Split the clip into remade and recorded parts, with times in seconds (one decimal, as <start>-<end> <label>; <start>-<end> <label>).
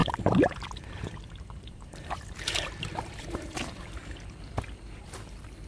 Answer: 0.0-4.0 remade; 4.0-5.0 recorded; 5.0-5.7 remade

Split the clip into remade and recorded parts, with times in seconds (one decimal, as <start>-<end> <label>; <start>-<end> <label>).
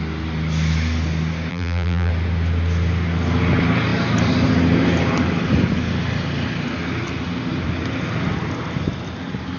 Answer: 0.0-1.5 recorded; 1.5-2.1 remade; 2.1-9.6 recorded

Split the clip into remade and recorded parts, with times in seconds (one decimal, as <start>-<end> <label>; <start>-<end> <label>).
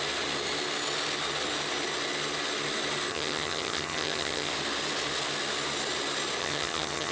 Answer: 0.0-3.1 recorded; 3.1-4.5 remade; 4.5-6.4 recorded; 6.4-7.1 remade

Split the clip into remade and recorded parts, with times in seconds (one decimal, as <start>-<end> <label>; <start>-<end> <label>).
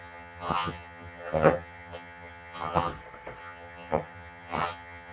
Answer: 0.0-2.9 remade; 2.9-3.4 recorded; 3.4-5.1 remade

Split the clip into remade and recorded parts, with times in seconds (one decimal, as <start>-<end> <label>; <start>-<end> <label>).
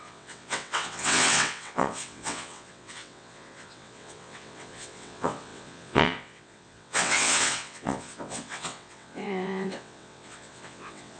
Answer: 0.0-11.2 remade